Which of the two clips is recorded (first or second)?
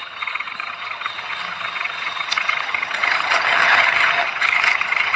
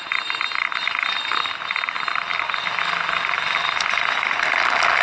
second